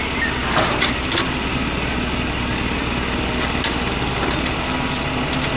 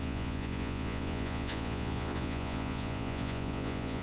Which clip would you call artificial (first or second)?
second